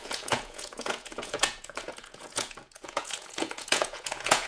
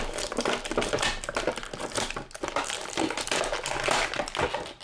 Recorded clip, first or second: second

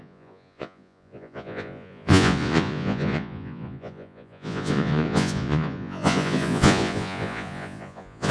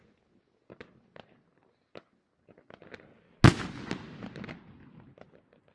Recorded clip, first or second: second